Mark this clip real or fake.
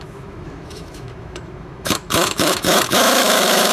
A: fake